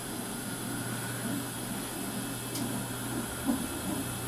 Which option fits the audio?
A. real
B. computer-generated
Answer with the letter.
A